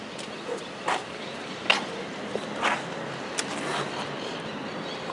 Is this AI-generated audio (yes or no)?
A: no